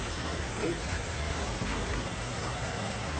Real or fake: fake